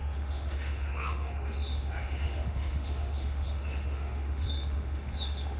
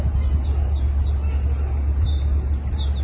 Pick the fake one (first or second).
first